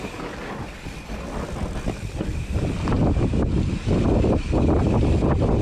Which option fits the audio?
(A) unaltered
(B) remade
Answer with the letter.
A